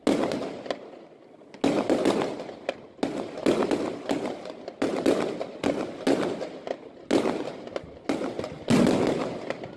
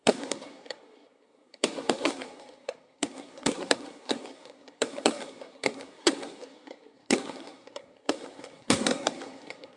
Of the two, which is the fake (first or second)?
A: second